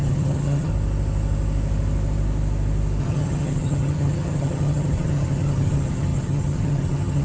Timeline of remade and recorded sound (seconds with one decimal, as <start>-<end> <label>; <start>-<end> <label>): 0.0-0.7 remade; 0.7-3.0 recorded; 3.0-7.2 remade